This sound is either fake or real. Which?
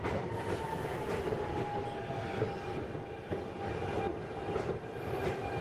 real